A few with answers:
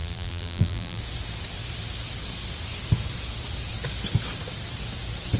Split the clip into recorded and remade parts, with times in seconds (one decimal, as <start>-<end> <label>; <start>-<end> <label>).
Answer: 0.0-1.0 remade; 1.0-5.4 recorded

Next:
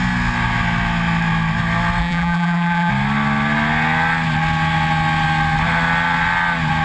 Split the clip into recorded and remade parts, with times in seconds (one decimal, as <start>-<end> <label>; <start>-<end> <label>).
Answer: 0.0-2.0 recorded; 2.0-2.9 remade; 2.9-6.8 recorded

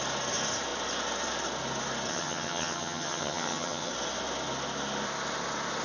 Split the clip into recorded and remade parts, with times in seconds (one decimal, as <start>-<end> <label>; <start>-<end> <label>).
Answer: 0.0-2.1 recorded; 2.1-3.9 remade; 3.9-5.8 recorded

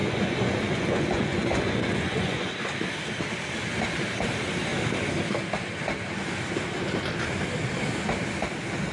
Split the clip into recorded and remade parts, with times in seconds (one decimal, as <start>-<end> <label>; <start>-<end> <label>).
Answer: 0.0-2.5 remade; 2.5-8.9 recorded

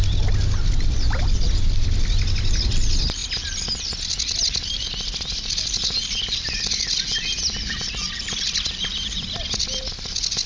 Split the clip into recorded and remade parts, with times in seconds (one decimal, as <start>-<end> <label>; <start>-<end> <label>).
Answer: 0.0-10.5 recorded